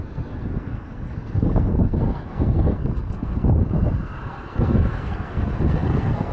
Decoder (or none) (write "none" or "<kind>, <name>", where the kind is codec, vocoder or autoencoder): codec, SNAC